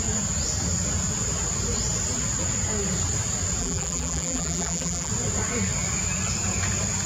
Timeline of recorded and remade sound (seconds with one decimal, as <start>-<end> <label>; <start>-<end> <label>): 0.0-3.6 recorded; 3.6-5.1 remade; 5.1-7.1 recorded